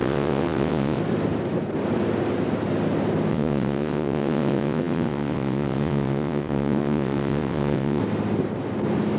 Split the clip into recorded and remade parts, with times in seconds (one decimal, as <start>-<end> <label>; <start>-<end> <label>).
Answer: 0.0-1.0 remade; 1.0-3.3 recorded; 3.3-8.0 remade; 8.0-9.2 recorded